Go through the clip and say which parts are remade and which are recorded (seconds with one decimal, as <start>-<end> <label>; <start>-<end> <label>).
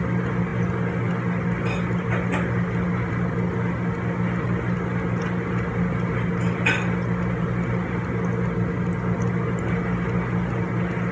0.0-11.1 recorded